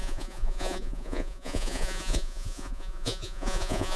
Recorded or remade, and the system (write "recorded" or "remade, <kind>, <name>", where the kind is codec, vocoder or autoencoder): remade, vocoder, Vocos